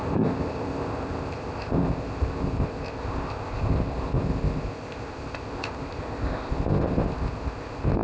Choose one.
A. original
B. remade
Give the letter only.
B